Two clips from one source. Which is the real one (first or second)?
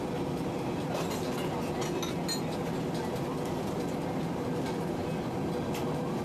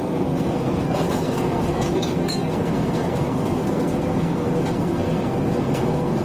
first